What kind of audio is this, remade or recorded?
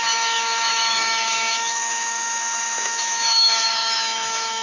remade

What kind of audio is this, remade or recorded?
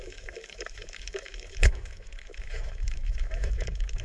remade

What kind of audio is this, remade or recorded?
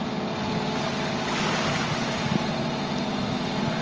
recorded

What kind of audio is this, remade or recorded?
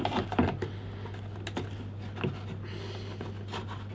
recorded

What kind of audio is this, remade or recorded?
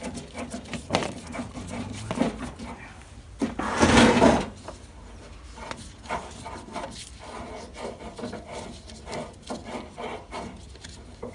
recorded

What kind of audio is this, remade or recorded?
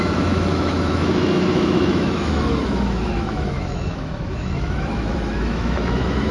remade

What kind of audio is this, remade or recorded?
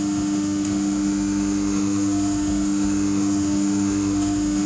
remade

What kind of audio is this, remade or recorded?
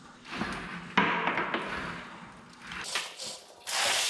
recorded